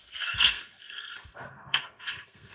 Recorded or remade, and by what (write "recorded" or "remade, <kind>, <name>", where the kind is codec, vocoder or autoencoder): remade, codec, SNAC